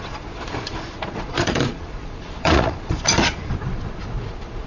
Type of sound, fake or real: fake